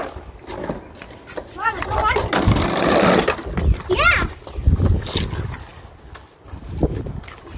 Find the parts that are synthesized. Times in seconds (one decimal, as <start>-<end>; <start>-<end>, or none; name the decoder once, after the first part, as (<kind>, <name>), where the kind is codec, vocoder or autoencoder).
none